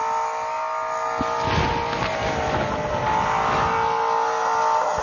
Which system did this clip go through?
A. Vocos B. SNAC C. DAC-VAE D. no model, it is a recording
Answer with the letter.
D